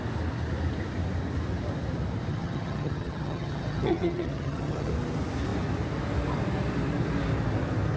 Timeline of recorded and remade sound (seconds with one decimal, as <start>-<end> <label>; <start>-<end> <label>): 0.0-2.3 recorded; 2.3-4.9 remade; 4.9-8.0 recorded